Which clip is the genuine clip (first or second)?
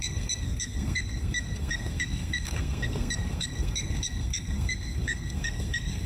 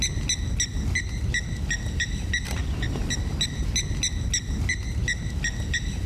second